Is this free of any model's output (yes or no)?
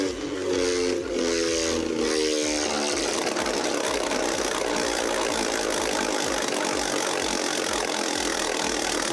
yes